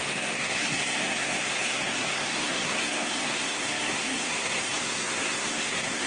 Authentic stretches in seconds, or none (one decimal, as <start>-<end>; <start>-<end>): none